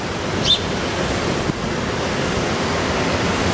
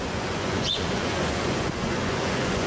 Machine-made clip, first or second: second